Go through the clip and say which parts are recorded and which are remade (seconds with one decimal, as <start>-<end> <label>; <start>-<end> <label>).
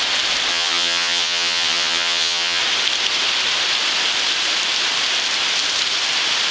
0.0-0.5 recorded; 0.5-2.6 remade; 2.6-6.5 recorded